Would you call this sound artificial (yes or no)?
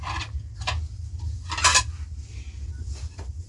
no